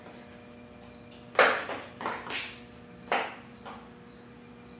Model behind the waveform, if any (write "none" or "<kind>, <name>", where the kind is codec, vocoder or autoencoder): none